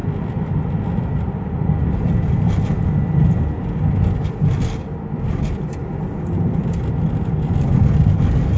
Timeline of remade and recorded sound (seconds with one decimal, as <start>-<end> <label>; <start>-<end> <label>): 0.0-8.6 recorded